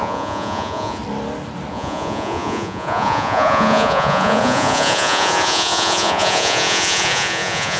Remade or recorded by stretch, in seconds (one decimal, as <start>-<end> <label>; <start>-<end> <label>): 0.0-1.0 remade; 1.0-1.7 recorded; 1.7-7.8 remade